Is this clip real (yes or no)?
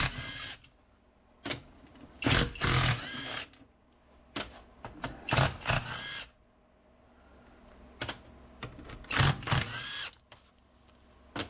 yes